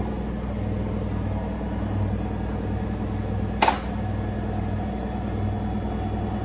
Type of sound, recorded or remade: recorded